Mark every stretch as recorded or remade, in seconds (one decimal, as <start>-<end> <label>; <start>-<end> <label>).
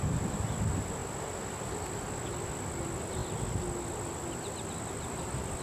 0.0-5.6 recorded